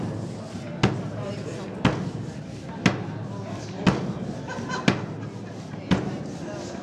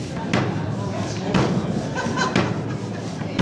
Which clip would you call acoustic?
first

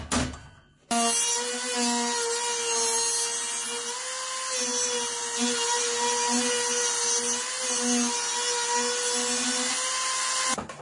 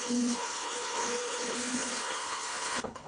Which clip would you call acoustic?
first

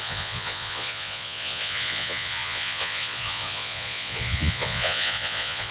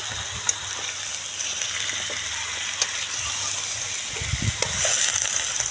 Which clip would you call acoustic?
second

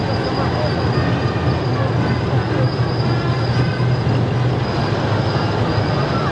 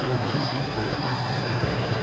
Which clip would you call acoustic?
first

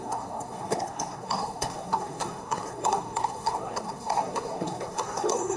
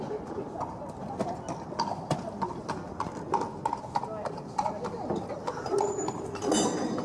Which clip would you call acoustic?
second